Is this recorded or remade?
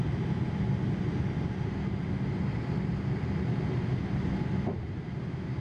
recorded